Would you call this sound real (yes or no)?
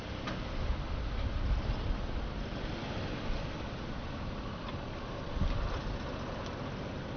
yes